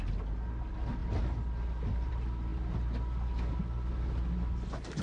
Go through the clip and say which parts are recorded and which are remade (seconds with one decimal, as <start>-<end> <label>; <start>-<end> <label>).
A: 0.0-5.0 recorded